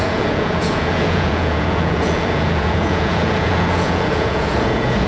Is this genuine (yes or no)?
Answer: no